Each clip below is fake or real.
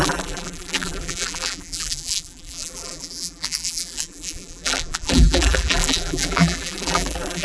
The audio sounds fake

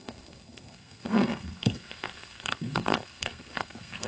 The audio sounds fake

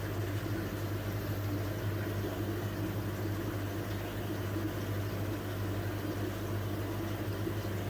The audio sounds real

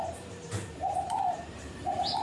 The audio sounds fake